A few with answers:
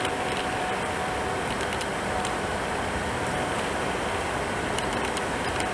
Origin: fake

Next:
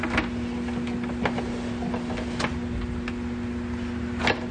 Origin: real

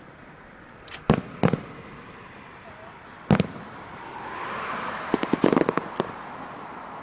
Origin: fake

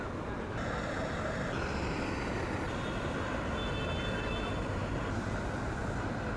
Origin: real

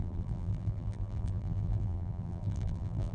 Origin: fake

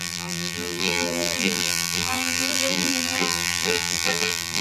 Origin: fake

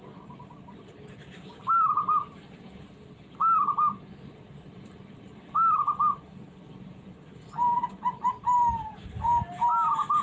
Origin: fake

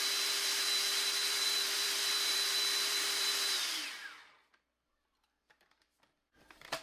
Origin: fake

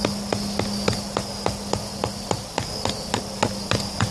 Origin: fake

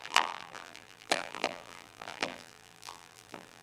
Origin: fake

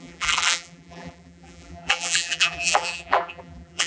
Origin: fake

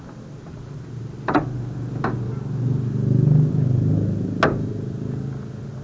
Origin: real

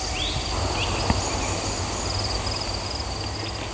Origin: real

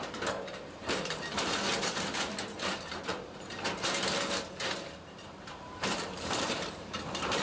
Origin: fake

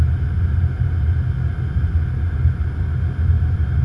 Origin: real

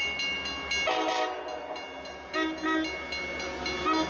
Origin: real